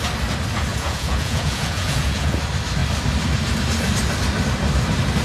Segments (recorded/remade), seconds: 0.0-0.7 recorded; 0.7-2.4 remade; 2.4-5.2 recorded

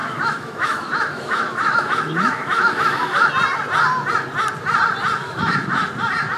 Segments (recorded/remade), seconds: 0.0-3.3 remade; 3.3-5.2 recorded; 5.2-5.8 remade; 5.8-6.4 recorded

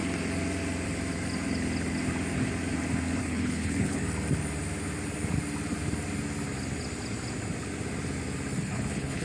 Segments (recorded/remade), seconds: 0.0-3.2 recorded; 3.2-4.0 remade; 4.0-8.6 recorded; 8.6-9.2 remade

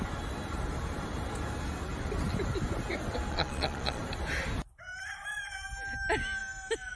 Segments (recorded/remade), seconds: 0.0-3.3 recorded; 3.3-4.0 remade; 4.0-7.0 recorded

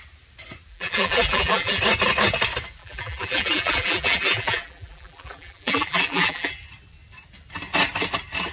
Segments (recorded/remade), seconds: 0.0-0.7 recorded; 0.7-1.8 remade; 1.8-2.8 recorded; 2.8-6.5 remade; 6.5-8.5 recorded

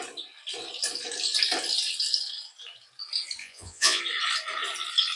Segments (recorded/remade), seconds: 0.0-3.4 recorded; 3.4-4.0 remade; 4.0-5.2 recorded